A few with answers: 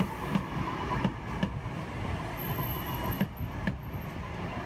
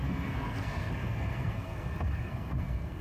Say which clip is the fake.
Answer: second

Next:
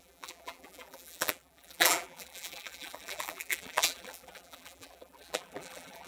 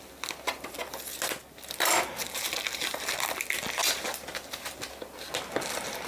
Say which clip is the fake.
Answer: first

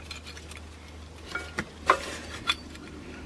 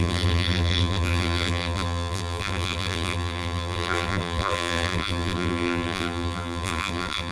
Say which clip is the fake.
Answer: second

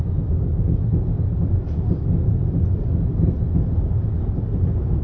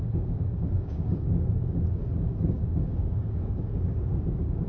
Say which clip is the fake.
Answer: second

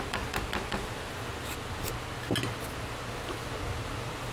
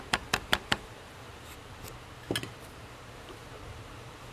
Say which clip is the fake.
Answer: second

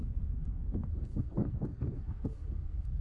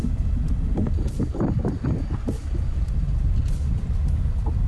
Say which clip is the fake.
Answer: first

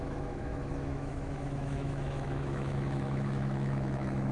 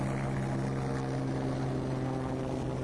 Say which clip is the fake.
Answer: first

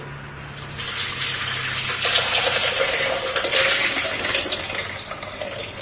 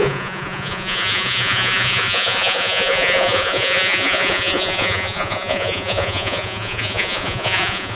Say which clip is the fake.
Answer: second